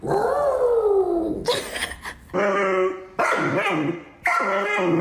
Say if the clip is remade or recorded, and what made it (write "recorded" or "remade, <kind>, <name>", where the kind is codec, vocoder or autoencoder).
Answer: recorded